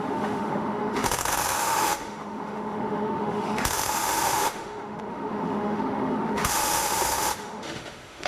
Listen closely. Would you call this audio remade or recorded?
remade